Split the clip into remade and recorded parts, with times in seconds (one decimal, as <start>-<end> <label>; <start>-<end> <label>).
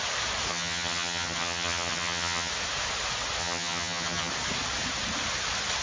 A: 0.0-0.5 recorded; 0.5-2.5 remade; 2.5-3.4 recorded; 3.4-4.3 remade; 4.3-5.8 recorded